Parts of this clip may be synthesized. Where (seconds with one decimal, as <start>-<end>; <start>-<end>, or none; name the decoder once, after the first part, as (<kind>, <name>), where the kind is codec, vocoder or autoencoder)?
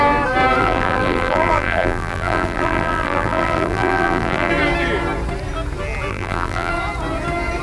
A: 0.6-4.5 (vocoder, BigVGAN v2); 6.1-6.7